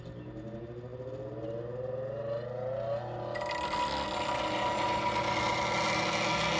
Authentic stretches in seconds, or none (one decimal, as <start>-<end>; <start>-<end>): 0.0-6.6